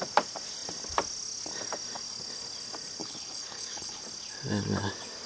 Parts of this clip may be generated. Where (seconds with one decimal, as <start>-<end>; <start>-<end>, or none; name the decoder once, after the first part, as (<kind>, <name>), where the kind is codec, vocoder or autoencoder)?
3.0-4.0 (codec, HILCodec)